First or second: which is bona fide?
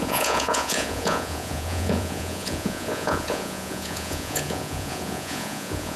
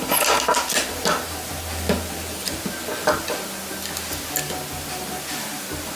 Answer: second